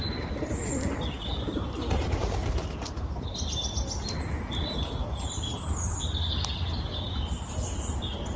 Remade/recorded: recorded